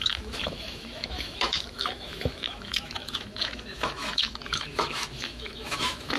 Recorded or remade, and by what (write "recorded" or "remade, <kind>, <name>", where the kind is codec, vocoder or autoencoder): remade, autoencoder, DAC-VAE